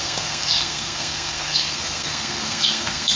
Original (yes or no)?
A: no